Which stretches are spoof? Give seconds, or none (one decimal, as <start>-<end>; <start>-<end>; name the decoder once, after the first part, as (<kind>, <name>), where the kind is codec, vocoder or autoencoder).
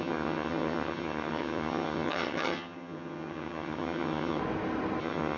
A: 0.0-4.4 (vocoder, HiFi-GAN); 5.0-5.4